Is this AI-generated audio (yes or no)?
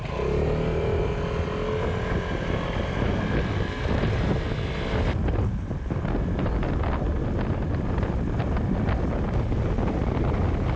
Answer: no